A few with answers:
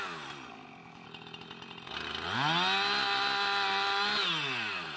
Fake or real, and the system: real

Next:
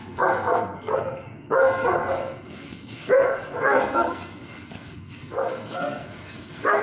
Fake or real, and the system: fake, codec, SNAC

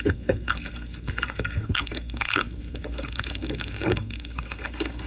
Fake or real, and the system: fake, codec, SNAC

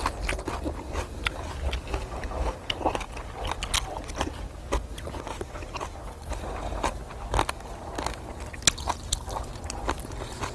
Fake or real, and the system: real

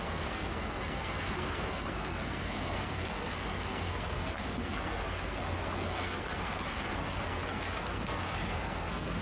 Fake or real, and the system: fake, codec, SNAC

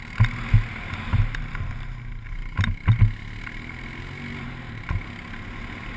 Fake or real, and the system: real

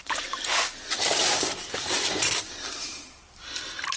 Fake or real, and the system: real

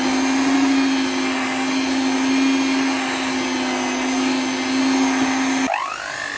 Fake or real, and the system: real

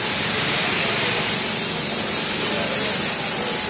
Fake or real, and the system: real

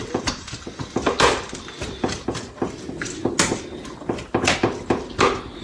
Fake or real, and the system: real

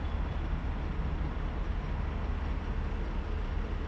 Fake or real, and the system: real